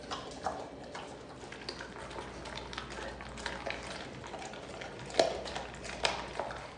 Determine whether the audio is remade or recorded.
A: recorded